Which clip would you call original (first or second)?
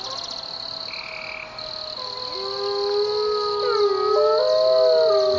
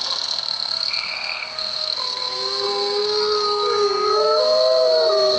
first